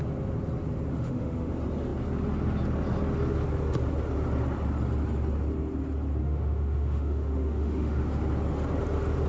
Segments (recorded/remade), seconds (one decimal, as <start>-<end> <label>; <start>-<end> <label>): 0.0-0.9 recorded; 0.9-1.5 remade; 1.5-6.2 recorded; 6.2-8.1 remade; 8.1-9.3 recorded